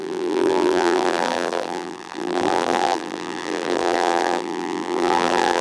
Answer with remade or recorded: remade